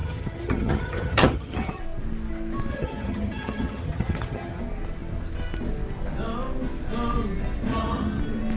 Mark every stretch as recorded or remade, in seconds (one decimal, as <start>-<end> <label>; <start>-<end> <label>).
0.0-1.8 remade; 1.8-2.7 recorded; 2.7-4.6 remade; 4.6-7.7 recorded; 7.7-8.2 remade; 8.2-8.6 recorded